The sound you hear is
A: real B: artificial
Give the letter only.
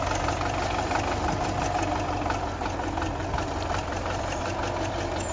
A